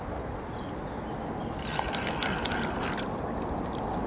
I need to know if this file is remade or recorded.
recorded